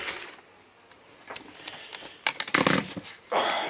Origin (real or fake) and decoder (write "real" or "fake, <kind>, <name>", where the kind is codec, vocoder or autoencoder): real